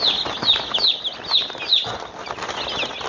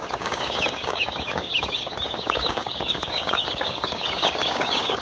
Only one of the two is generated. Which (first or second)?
second